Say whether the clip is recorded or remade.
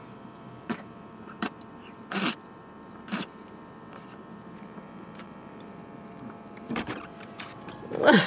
remade